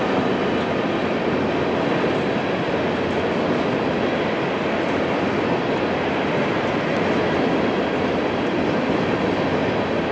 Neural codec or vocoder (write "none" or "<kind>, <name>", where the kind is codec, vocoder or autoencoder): none